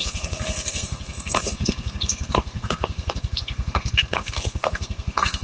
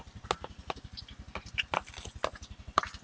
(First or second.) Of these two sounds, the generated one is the first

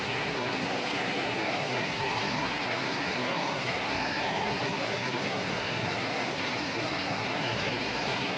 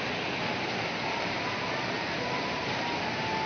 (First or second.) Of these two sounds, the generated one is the first